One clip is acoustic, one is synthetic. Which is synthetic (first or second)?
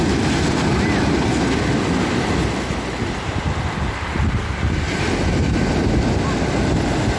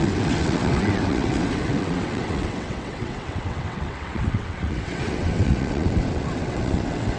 second